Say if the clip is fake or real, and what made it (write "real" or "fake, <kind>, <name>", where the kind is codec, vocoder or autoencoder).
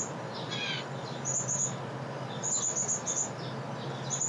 real